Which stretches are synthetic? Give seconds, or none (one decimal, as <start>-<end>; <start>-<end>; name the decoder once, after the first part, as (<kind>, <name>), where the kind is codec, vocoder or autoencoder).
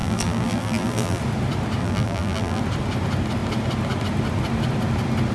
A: 0.0-1.2 (vocoder, BigVGAN v2); 1.8-2.6